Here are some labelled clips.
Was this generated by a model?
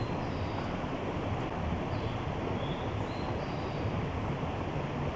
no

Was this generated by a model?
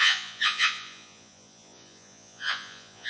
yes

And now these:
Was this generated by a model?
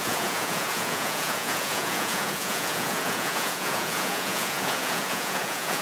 yes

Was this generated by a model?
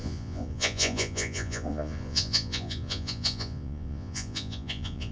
yes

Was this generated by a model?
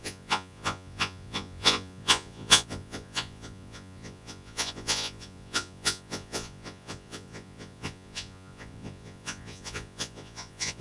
yes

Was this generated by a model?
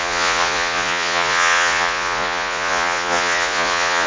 yes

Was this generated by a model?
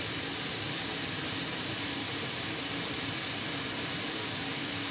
no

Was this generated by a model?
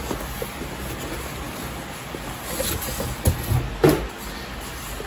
no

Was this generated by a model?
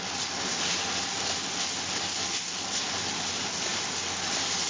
no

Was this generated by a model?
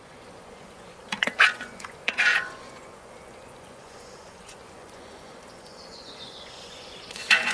yes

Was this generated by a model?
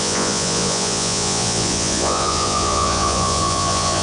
yes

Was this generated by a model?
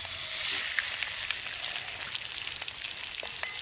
no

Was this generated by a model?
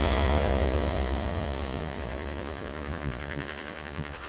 yes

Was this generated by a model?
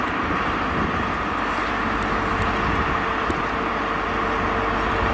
no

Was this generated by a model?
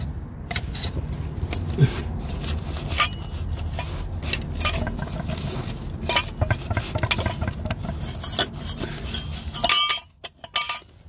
no